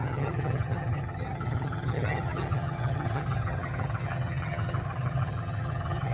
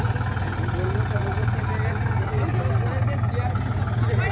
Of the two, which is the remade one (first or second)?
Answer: first